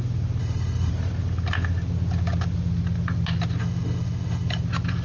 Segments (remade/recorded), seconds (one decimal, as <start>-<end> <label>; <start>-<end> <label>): 0.0-0.4 recorded; 0.4-0.9 remade; 0.9-3.6 recorded; 3.6-4.6 remade; 4.6-5.0 recorded